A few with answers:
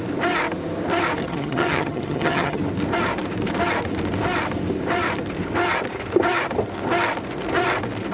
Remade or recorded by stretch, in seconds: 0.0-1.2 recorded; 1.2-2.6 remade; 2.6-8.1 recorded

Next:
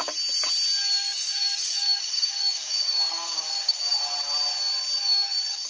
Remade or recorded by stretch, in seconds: 0.0-1.0 recorded; 1.0-4.0 remade; 4.0-5.0 recorded; 5.0-5.7 remade

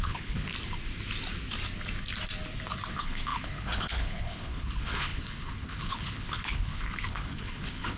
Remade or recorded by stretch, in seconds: 0.0-0.5 remade; 0.5-2.9 recorded; 2.9-8.0 remade